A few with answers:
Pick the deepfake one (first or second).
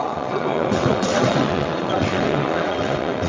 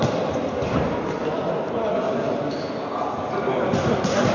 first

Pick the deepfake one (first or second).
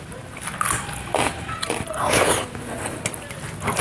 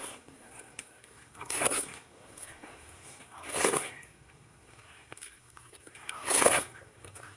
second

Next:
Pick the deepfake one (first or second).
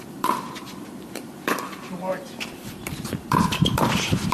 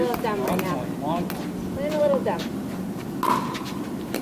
first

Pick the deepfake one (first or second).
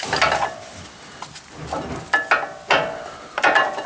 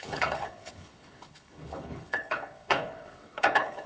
second